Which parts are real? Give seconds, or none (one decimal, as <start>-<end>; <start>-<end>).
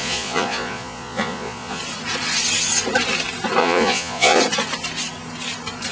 1.8-3.6; 4.4-5.9